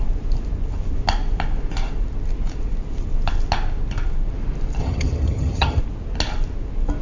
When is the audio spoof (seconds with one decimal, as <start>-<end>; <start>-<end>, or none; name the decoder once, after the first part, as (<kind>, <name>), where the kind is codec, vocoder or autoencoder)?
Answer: 4.8-5.8 (vocoder, HiFi-GAN)